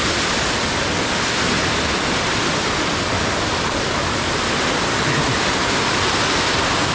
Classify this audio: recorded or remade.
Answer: recorded